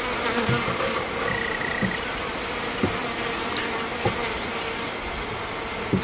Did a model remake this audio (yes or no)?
no